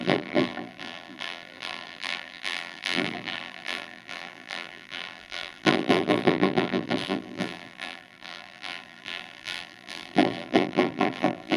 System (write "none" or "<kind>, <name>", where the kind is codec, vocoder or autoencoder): vocoder, BigVGAN v2